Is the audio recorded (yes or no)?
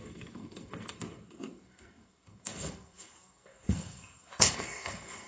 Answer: no